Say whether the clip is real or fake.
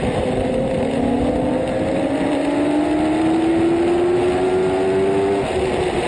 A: real